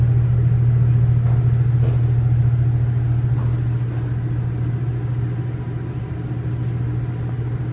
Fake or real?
real